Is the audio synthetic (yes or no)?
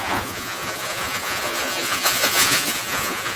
yes